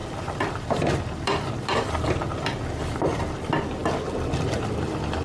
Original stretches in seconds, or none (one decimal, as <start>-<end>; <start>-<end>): 0.0-5.2

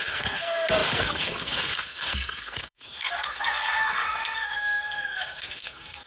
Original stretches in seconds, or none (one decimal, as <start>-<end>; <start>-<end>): none

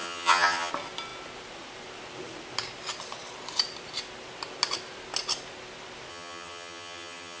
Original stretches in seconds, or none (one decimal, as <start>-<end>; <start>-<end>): 0.7-6.1

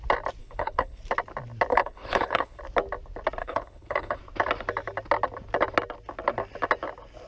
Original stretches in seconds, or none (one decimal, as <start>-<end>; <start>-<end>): 0.0-0.4; 1.0-1.7; 2.6-3.4; 4.2-7.3